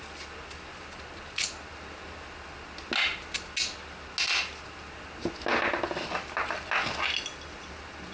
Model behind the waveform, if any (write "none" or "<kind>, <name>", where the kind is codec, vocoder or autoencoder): none